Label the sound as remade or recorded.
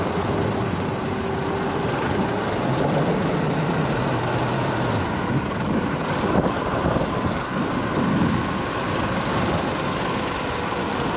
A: recorded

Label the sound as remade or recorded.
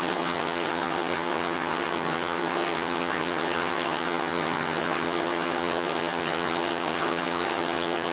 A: remade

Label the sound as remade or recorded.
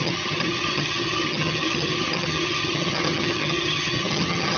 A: remade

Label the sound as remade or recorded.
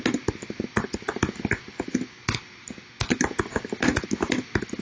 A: recorded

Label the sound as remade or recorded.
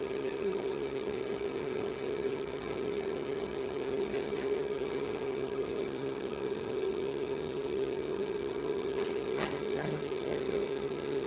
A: remade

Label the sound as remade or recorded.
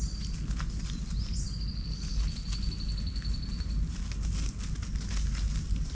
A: recorded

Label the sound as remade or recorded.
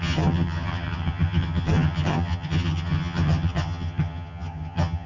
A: remade